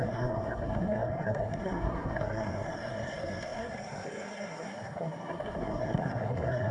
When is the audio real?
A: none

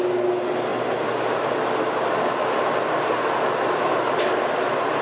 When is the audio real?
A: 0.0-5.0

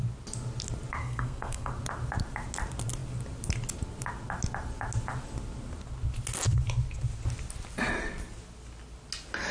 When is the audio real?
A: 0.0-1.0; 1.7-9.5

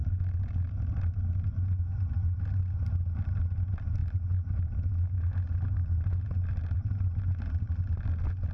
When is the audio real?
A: 0.0-1.5; 2.7-4.0; 5.3-5.8; 7.8-8.5

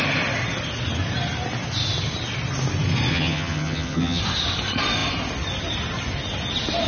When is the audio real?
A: 0.0-3.1; 4.2-6.9

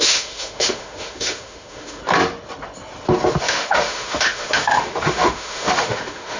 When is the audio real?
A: 2.0-3.4

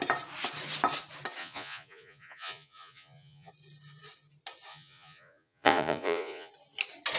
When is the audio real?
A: 0.0-1.4; 3.5-4.7; 6.5-7.2

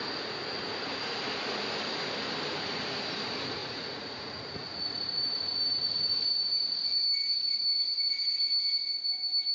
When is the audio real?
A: 0.0-3.6; 5.2-9.5